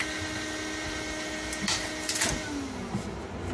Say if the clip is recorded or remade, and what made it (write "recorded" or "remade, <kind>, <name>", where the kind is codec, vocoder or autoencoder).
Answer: recorded